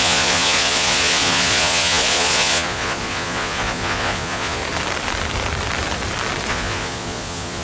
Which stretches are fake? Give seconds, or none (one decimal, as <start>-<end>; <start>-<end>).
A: 0.0-4.6; 6.5-7.6